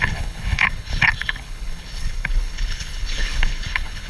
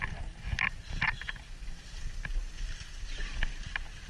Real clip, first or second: second